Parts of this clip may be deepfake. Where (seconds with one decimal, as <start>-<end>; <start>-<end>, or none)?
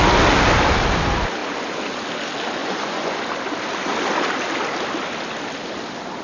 2.6-3.2